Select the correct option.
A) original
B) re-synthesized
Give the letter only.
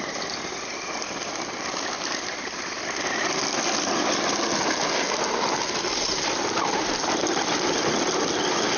A